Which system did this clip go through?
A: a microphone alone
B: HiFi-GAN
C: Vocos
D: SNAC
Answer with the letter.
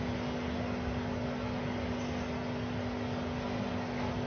A